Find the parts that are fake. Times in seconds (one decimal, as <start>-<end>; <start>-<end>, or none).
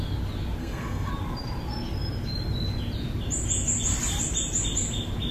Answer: 0.6-1.1